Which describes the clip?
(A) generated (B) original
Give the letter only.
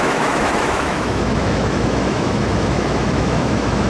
A